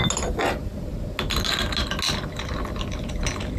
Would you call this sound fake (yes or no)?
no